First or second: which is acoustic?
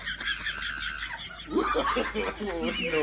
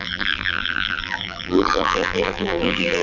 first